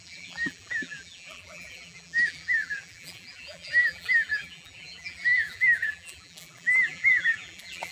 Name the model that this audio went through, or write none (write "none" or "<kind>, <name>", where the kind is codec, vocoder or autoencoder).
vocoder, BigVGAN v2